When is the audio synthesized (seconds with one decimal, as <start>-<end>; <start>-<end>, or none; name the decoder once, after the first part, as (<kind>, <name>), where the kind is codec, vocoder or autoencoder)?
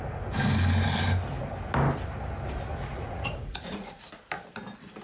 2.7-4.0 (vocoder, Vocos)